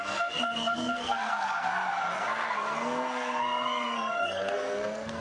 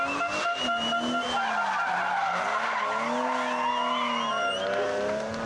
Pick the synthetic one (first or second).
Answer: first